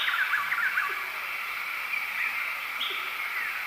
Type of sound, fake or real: real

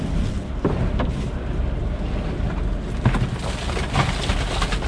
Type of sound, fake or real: real